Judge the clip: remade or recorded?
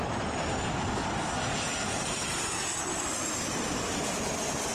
recorded